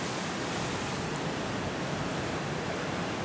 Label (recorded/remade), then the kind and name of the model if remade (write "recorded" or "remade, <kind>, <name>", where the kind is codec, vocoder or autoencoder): recorded